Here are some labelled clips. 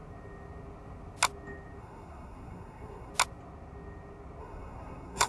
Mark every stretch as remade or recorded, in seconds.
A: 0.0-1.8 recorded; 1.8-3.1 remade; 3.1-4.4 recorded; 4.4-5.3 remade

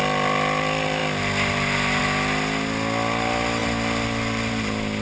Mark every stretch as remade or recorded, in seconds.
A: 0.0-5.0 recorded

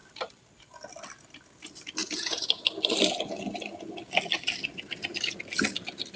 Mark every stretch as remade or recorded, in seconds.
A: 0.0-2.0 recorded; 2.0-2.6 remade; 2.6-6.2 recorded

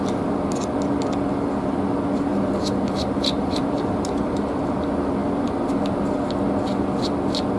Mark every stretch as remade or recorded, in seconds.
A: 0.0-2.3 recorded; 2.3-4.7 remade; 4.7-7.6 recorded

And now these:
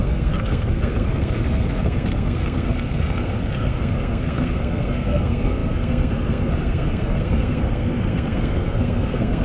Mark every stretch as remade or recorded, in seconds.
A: 0.0-9.4 remade

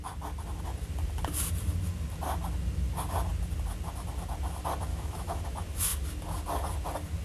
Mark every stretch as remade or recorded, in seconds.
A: 0.0-4.9 recorded; 4.9-5.4 remade; 5.4-7.2 recorded